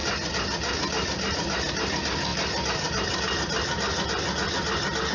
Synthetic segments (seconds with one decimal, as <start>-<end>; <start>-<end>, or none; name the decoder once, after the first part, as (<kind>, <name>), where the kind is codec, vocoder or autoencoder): none